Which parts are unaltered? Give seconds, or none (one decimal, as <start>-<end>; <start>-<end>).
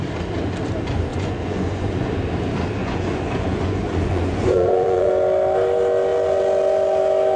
0.0-1.1; 2.1-2.8; 5.1-7.4